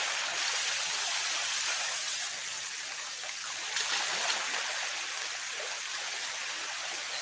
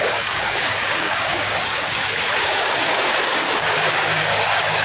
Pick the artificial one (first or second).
second